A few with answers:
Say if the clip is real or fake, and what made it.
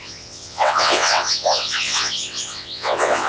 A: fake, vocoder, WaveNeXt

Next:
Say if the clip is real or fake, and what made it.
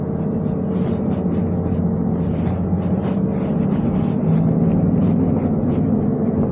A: real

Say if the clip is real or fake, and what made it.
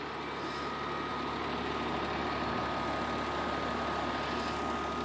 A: real